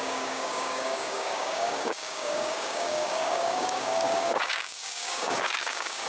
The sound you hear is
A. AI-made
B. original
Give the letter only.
A